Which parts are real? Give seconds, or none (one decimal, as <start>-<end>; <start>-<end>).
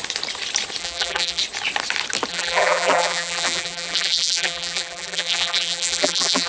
0.0-0.8; 1.4-2.3